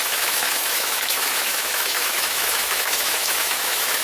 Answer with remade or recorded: remade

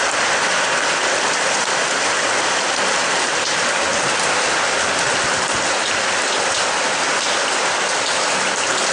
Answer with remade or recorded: recorded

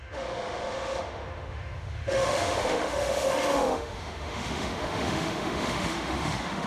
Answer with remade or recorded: remade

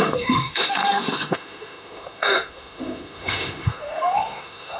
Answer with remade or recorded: remade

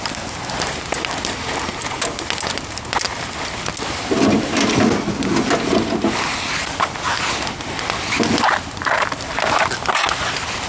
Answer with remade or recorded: recorded